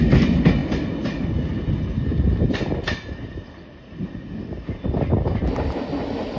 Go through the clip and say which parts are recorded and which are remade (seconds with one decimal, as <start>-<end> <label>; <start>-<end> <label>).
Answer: 0.0-6.4 recorded